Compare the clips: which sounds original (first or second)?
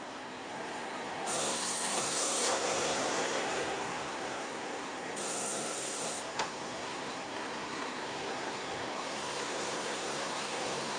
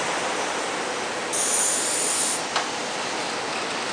second